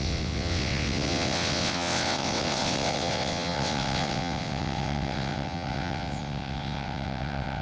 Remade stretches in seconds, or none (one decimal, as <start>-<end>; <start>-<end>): 0.0-7.6